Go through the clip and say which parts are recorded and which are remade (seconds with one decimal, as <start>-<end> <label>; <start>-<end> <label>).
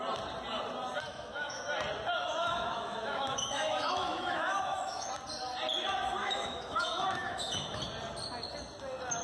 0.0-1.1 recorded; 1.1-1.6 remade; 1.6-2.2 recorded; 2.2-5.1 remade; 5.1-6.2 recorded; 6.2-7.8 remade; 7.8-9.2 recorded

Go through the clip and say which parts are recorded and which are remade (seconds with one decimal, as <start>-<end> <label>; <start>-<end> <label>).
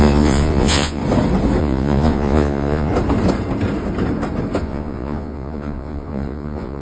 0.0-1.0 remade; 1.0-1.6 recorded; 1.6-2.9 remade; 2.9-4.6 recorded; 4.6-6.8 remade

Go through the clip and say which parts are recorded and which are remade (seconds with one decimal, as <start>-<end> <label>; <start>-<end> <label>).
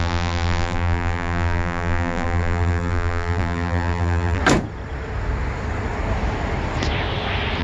0.0-4.4 remade; 4.4-7.6 recorded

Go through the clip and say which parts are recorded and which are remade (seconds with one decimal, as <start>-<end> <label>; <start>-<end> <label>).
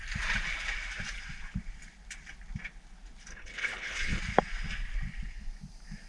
0.0-3.3 recorded; 3.3-4.2 remade; 4.2-6.1 recorded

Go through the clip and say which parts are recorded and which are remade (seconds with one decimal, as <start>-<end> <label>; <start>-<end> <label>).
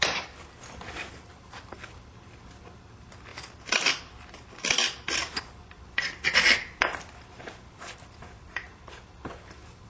0.0-9.9 recorded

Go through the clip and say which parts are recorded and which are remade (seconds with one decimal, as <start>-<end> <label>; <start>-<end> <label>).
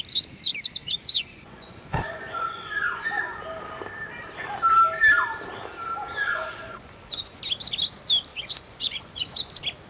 0.0-0.8 recorded; 0.8-3.4 remade; 3.4-6.1 recorded; 6.1-7.4 remade; 7.4-8.3 recorded; 8.3-9.5 remade; 9.5-9.9 recorded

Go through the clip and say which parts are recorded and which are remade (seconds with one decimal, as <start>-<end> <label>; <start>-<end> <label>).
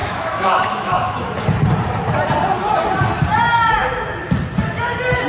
0.0-1.3 remade; 1.3-5.3 recorded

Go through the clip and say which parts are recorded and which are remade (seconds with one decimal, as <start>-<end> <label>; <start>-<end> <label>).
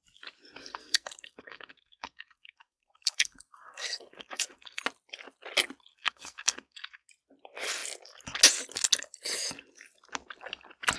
0.0-0.7 recorded; 0.7-4.8 remade; 4.8-5.9 recorded; 5.9-7.1 remade; 7.1-11.0 recorded